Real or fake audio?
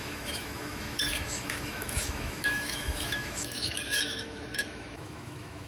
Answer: fake